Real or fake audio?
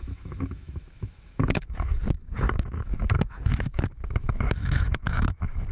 fake